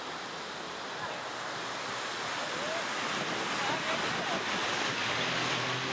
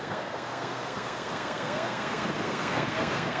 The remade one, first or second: second